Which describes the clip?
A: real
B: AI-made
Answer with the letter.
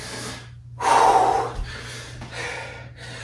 A